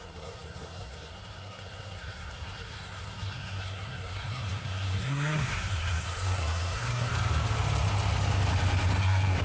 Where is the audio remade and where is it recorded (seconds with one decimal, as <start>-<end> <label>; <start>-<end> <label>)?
0.0-7.1 remade; 7.1-9.0 recorded; 9.0-9.4 remade